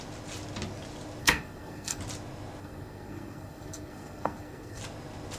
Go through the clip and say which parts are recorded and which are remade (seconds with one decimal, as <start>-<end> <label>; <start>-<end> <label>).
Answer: 0.0-1.2 recorded; 1.2-2.0 remade; 2.0-2.6 recorded; 2.6-4.8 remade; 4.8-5.4 recorded

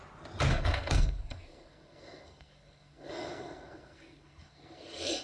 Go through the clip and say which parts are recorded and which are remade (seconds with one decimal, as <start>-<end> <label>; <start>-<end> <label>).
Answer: 0.0-0.5 recorded; 0.5-5.2 remade

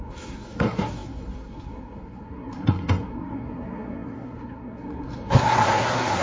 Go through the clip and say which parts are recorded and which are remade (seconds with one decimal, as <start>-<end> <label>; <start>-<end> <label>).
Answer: 0.0-6.2 remade

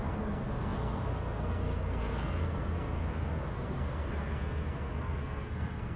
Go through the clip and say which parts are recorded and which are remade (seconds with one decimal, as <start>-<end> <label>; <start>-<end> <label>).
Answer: 0.0-6.0 remade